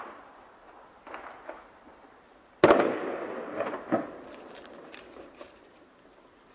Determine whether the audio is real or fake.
fake